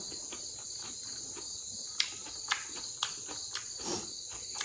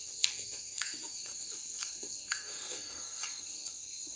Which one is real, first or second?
first